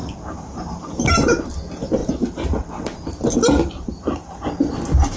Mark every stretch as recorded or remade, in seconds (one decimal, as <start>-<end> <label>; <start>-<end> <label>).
0.0-5.2 recorded